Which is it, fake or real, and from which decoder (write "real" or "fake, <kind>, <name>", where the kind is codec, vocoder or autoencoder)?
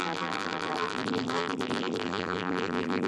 fake, vocoder, BigVGAN v2